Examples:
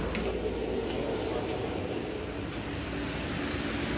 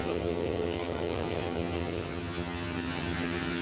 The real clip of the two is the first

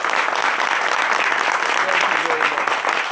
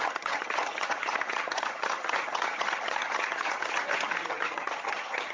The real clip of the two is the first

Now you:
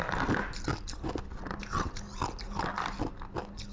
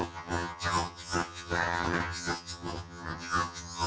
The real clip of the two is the first